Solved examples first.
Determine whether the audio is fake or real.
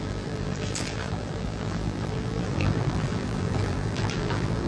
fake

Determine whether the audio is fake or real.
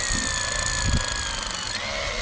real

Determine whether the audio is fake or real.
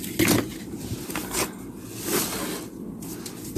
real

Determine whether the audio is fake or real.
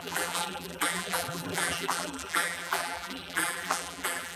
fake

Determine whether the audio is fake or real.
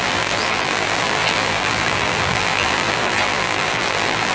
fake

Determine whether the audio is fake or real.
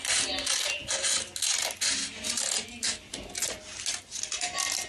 real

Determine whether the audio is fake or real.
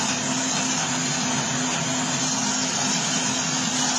real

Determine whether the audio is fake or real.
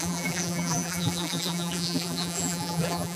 fake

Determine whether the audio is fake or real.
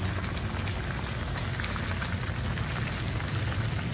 real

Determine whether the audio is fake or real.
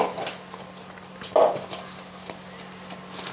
real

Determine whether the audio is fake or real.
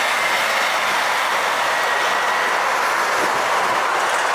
real